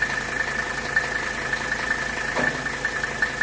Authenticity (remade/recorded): recorded